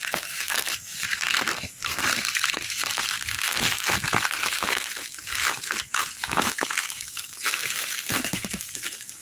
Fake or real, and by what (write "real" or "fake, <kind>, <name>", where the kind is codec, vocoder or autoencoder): fake, codec, SNAC